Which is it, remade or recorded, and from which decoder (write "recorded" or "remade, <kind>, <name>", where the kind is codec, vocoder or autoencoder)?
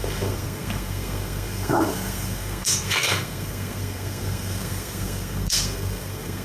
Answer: remade, codec, SNAC